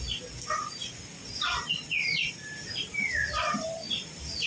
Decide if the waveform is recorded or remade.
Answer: recorded